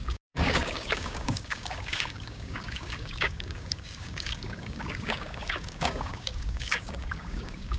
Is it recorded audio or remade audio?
remade